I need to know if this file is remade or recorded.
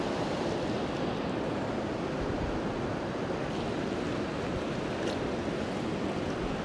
recorded